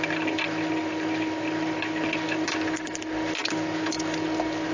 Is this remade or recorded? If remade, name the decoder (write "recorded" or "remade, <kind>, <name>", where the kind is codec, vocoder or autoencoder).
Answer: recorded